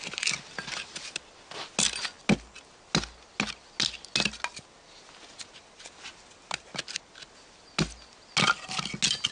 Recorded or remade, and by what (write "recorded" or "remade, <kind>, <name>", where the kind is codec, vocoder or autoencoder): recorded